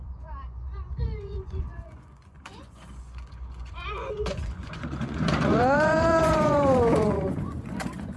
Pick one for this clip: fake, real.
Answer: fake